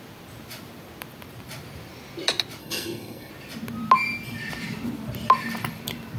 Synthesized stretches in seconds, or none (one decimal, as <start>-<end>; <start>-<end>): 2.6-3.3